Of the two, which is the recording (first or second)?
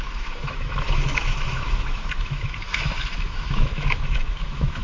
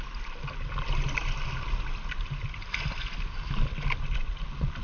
second